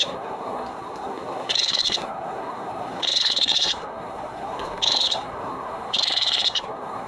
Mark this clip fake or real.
fake